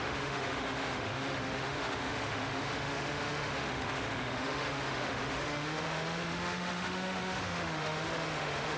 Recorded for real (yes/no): no